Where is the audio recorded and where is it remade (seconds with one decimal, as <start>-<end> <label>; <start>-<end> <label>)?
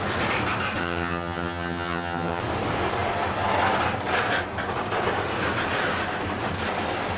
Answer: 0.0-0.8 recorded; 0.8-2.4 remade; 2.4-7.2 recorded